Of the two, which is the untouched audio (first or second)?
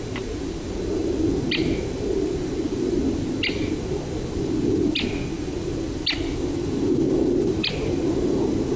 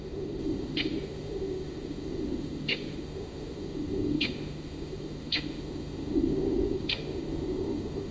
first